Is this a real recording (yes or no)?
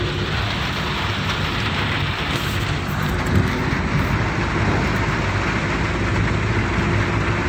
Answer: yes